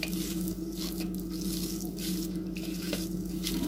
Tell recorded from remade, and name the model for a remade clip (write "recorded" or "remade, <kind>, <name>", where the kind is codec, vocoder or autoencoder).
remade, codec, DAC